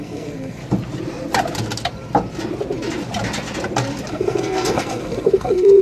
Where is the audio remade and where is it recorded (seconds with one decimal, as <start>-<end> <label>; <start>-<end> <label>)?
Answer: 0.0-0.6 remade; 0.6-4.1 recorded; 4.1-5.8 remade